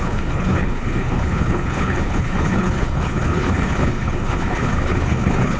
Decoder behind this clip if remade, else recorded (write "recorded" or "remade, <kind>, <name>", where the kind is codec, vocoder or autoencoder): remade, codec, HILCodec